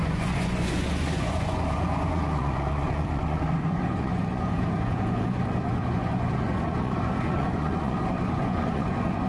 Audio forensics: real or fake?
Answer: fake